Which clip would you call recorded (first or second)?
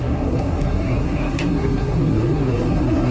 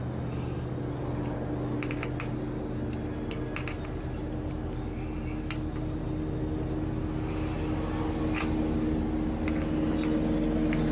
second